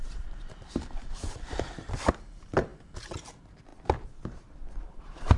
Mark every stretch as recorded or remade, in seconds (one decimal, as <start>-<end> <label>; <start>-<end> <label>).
0.0-5.4 remade

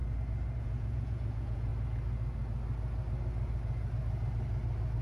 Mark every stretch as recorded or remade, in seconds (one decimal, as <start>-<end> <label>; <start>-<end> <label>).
0.0-0.6 recorded; 0.6-1.7 remade; 1.7-5.0 recorded

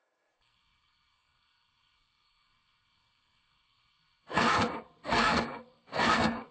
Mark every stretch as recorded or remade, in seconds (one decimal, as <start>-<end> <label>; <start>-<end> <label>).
0.0-6.5 remade

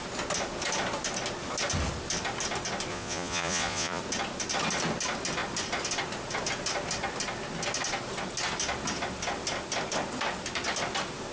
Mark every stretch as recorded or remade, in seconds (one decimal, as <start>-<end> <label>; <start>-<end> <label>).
0.0-2.9 recorded; 2.9-4.0 remade; 4.0-11.3 recorded

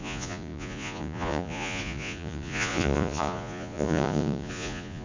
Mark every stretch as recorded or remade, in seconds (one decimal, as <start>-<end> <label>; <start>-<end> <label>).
0.0-5.0 remade

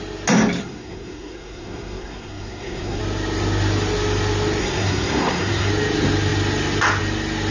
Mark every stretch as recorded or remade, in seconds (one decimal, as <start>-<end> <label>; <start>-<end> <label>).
0.0-0.6 recorded; 0.6-3.0 remade; 3.0-4.6 recorded; 4.6-5.7 remade; 5.7-7.5 recorded

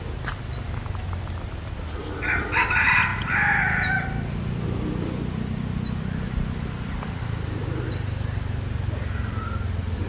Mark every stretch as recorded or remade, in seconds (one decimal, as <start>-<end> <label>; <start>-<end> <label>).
0.0-10.1 recorded